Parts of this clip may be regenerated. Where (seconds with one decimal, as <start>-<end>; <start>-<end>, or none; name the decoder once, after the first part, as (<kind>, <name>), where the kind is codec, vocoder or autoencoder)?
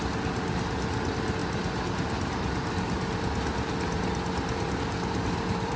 none